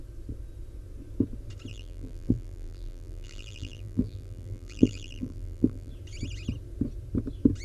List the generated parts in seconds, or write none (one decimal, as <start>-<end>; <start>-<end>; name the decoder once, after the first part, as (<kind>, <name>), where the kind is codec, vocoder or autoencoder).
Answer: 1.7-5.9 (vocoder, BigVGAN v2)